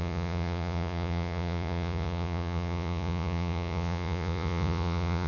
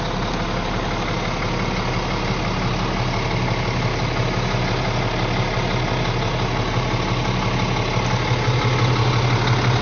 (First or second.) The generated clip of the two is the first